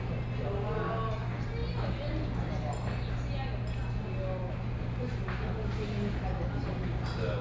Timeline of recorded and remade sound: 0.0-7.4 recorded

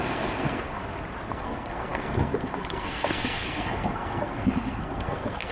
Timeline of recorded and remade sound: 0.0-0.8 remade; 0.8-1.3 recorded; 1.3-5.5 remade

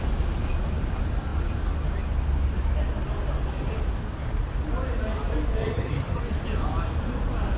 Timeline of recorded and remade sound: 0.0-5.6 recorded; 5.6-6.2 remade; 6.2-7.6 recorded

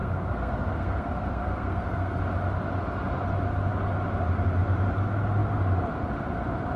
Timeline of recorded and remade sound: 0.0-2.2 remade; 2.2-6.8 recorded